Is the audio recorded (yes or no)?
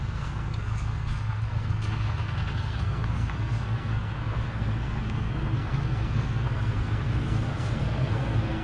no